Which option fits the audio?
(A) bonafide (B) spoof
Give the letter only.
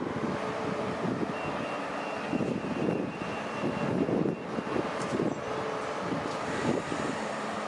B